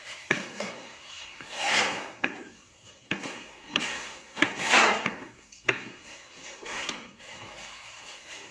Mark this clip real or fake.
fake